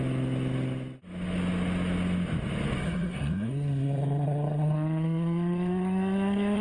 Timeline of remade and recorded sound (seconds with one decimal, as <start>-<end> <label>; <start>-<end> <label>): 0.0-2.8 recorded; 2.8-6.6 remade